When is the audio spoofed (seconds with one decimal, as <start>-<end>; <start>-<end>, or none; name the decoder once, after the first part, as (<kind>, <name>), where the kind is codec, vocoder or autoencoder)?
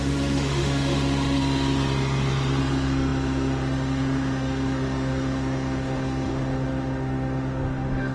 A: 0.0-1.4 (autoencoder, DAC-VAE); 2.6-8.1